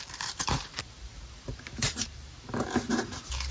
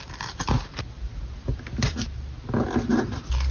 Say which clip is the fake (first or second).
first